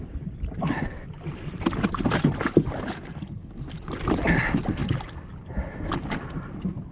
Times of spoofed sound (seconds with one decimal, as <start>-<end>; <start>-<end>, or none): none